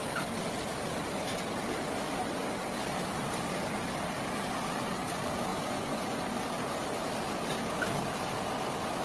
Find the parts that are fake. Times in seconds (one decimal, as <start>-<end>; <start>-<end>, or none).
5.5-6.3